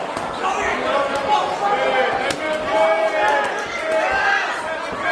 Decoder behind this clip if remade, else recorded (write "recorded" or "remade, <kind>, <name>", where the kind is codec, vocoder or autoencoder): recorded